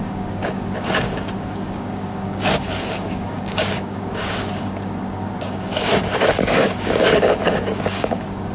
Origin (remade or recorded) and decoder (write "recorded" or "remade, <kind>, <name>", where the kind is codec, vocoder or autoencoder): remade, codec, DAC